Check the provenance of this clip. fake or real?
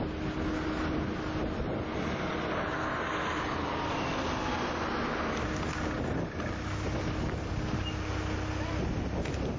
real